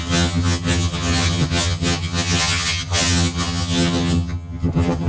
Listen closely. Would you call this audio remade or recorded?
remade